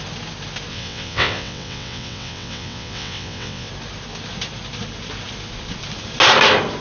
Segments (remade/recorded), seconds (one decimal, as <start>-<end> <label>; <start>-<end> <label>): 0.0-0.7 recorded; 0.7-3.7 remade; 3.7-6.8 recorded